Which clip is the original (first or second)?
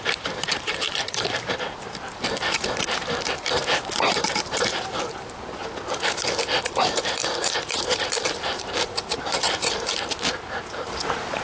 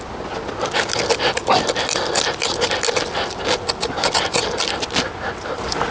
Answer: second